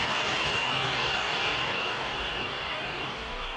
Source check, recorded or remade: remade